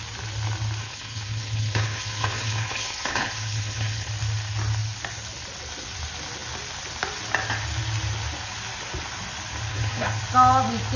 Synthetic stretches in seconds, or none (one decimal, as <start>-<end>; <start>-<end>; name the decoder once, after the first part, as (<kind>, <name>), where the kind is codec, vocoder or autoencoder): 0.8-4.1 (codec, HILCodec); 9.7-10.2

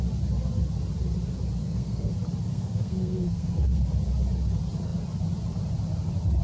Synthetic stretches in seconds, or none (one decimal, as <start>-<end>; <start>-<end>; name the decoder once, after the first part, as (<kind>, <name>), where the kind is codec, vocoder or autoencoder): 1.6-2.1 (codec, SNAC); 2.5-3.8

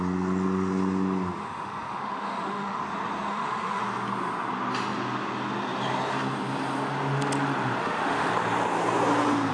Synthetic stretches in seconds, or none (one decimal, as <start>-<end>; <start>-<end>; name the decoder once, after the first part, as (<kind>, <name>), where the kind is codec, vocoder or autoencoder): 1.4-2.8 (autoencoder, DAC-VAE); 3.3-3.8; 7.8-8.3

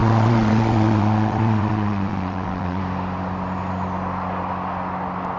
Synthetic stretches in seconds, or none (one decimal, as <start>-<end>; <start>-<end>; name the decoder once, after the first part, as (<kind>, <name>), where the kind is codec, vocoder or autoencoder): 0.0-2.8 (vocoder, WaveNeXt)

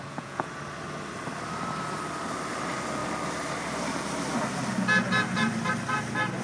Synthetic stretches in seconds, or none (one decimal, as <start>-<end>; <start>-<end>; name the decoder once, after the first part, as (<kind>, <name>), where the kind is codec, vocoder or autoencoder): 0.0-0.5 (vocoder, Vocos)

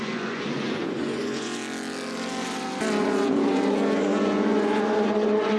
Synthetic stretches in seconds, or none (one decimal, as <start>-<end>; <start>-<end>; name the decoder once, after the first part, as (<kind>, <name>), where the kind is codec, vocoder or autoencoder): 0.0-1.6 (vocoder, Vocos); 3.0-5.6

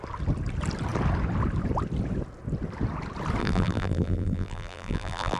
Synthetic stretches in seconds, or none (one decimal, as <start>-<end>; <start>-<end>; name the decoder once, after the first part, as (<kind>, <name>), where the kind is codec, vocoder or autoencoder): 3.4-5.4 (vocoder, BigVGAN v2)

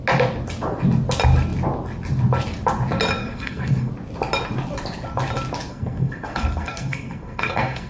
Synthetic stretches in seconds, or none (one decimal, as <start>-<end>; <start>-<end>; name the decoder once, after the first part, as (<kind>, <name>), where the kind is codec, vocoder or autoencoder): 3.2-3.9 (codec, SNAC); 5.7-7.9